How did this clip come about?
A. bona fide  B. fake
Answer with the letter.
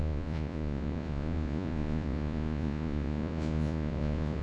B